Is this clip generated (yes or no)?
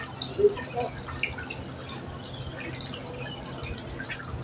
no